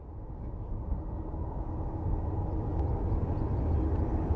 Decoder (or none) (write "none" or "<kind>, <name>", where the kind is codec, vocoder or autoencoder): none